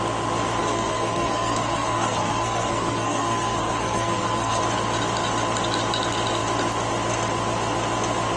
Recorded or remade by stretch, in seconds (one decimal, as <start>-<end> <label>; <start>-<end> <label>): 0.0-0.6 recorded; 0.6-4.6 remade; 4.6-8.4 recorded